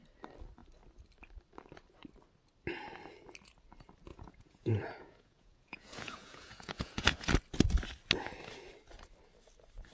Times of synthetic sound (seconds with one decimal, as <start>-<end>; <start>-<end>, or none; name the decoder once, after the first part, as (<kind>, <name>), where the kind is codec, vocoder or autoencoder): 4.1-7.3 (vocoder, Vocos)